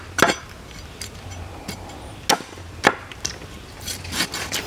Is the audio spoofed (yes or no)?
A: no